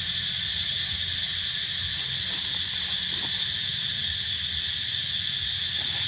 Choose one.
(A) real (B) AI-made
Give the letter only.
A